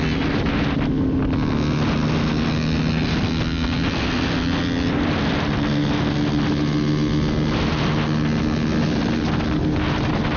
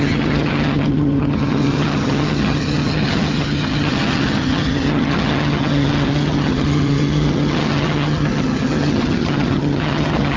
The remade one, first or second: second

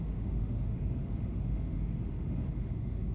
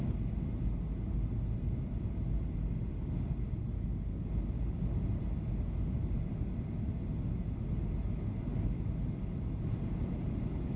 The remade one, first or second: first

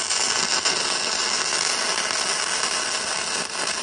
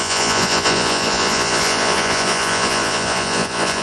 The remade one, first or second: second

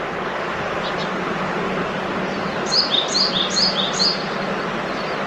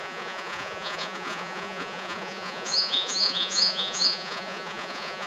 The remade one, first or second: second